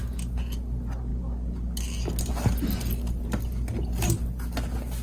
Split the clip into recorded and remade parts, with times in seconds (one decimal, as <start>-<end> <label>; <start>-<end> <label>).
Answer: 0.0-5.0 recorded